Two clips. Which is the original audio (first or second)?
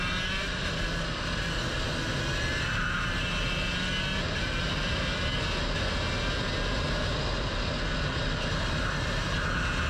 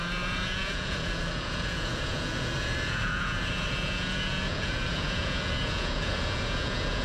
first